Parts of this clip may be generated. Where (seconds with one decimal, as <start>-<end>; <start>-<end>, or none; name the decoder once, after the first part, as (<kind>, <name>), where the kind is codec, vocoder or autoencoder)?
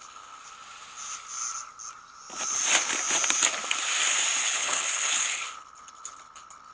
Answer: 0.0-0.4 (codec, HILCodec); 4.4-6.7